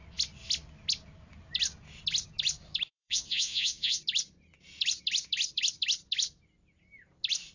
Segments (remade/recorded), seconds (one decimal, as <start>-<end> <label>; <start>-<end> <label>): 0.0-2.9 recorded; 2.9-4.0 remade; 4.0-7.5 recorded